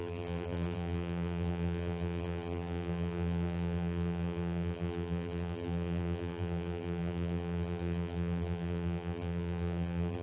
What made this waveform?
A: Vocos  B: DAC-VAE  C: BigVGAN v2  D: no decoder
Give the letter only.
C